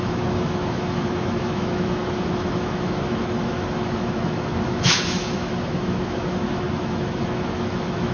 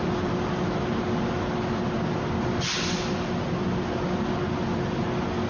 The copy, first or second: first